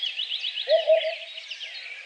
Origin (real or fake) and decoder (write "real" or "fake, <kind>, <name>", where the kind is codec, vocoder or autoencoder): fake, vocoder, BigVGAN v2